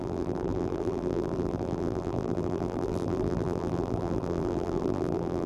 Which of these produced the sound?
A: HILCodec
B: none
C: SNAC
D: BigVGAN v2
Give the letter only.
D